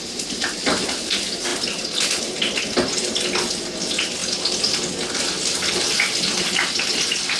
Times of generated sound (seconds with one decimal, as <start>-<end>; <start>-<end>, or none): none